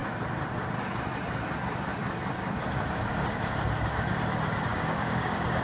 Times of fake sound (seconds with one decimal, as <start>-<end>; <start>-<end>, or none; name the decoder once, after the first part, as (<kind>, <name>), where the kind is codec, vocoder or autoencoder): 4.7-5.6 (codec, DAC)